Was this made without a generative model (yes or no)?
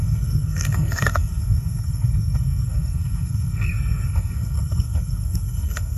no